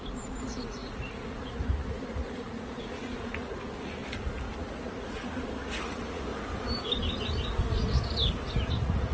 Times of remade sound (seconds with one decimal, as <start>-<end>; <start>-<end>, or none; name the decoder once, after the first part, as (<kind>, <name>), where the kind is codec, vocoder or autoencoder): 0.0-4.0 (vocoder, Vocos); 4.6-6.3; 8.7-9.1

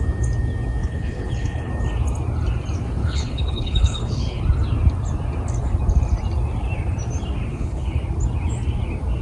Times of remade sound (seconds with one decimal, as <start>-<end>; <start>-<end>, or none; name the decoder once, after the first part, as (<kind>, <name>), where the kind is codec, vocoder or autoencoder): 0.8-1.7 (codec, HILCodec); 3.0-4.4; 7.5-8.0

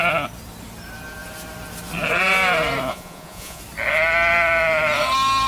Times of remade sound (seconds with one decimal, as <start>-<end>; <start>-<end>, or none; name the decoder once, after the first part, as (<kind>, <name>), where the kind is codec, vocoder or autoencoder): 2.9-3.6 (vocoder, Vocos)

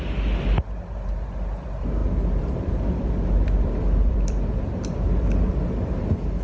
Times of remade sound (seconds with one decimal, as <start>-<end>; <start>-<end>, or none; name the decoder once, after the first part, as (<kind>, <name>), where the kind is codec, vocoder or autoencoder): 2.0-5.8 (vocoder, BigVGAN v2)

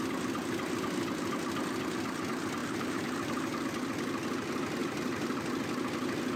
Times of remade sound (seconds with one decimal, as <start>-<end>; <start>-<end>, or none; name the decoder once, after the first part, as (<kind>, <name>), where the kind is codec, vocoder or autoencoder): 2.6-3.6 (vocoder, BigVGAN v2); 4.8-5.5

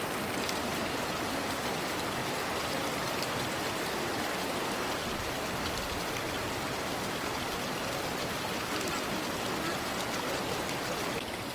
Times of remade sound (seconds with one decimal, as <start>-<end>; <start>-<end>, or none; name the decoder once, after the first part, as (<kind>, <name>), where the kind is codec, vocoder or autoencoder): none

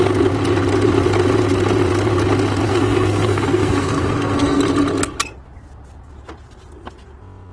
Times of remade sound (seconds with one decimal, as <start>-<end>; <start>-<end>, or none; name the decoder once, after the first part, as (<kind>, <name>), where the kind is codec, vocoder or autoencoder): 2.7-4.6 (codec, SNAC)